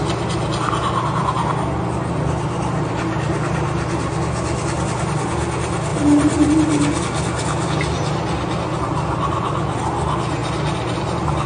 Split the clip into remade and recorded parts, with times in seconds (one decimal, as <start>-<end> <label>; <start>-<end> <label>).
0.0-5.9 recorded; 5.9-6.5 remade; 6.5-11.5 recorded

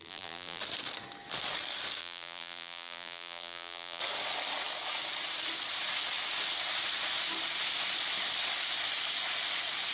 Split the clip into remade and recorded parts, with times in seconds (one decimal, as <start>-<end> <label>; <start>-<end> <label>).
0.0-0.6 remade; 0.6-2.0 recorded; 2.0-4.0 remade; 4.0-9.9 recorded

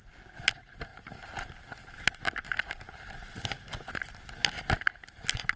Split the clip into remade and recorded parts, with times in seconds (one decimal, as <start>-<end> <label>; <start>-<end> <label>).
0.0-5.6 recorded

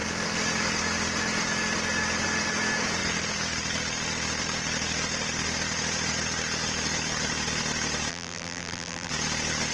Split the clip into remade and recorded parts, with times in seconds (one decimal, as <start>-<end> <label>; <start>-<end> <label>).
0.0-8.1 recorded; 8.1-9.1 remade; 9.1-9.7 recorded

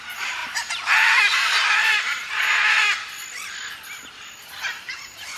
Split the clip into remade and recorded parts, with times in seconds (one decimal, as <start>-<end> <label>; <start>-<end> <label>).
0.0-2.7 remade; 2.7-4.4 recorded; 4.4-5.4 remade